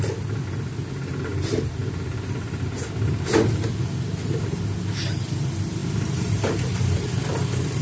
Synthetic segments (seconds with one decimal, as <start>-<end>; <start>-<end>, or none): none